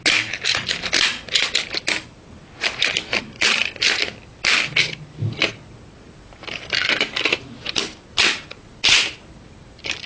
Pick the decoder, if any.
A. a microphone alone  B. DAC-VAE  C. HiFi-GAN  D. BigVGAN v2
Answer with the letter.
A